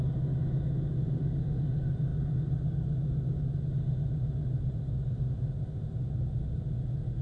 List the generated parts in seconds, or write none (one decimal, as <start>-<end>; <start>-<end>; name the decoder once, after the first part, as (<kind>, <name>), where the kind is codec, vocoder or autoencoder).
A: none